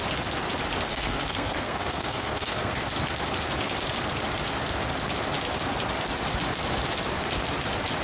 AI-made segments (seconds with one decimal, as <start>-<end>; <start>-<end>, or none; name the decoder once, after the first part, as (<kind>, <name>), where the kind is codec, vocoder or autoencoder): 0.9-2.7 (codec, SNAC)